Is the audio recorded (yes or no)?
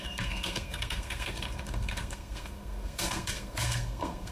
no